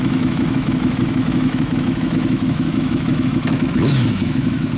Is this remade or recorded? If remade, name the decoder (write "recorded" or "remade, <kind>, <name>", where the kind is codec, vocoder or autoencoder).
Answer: remade, autoencoder, DAC-VAE